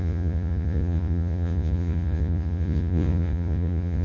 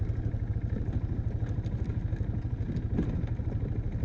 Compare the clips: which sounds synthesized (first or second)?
first